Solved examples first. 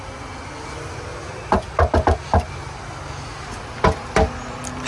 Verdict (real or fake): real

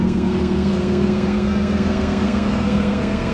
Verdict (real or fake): fake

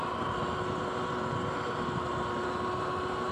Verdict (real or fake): real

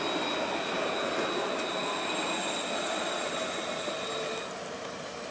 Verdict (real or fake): real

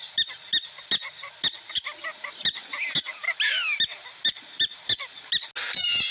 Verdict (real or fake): real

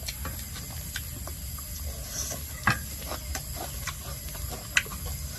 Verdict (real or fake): real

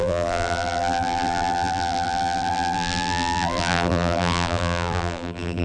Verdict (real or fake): fake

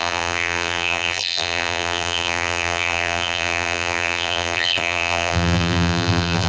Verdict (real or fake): fake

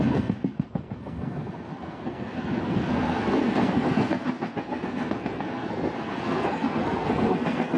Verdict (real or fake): fake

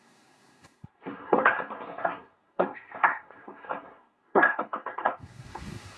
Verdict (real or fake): fake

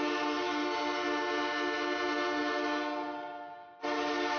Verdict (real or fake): real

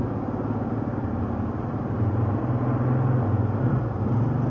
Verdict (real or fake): real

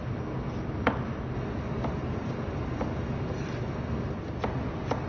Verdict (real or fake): real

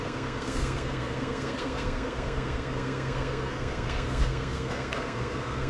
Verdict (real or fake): fake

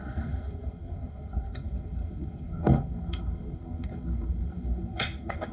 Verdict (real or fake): fake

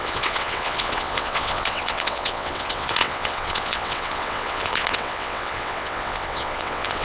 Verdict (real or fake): fake